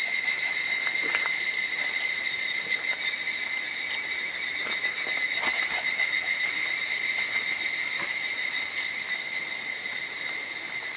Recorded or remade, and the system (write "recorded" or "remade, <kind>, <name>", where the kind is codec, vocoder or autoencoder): recorded